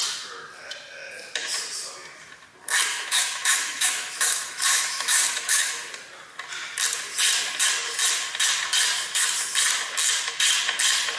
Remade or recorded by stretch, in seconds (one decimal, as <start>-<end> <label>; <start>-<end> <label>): 0.0-2.9 recorded; 2.9-5.9 remade; 5.9-11.2 recorded